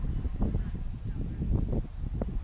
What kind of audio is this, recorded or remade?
recorded